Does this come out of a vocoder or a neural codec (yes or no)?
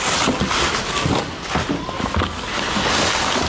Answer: no